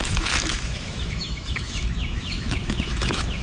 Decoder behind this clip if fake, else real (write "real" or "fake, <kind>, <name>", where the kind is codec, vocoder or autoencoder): fake, autoencoder, DAC-VAE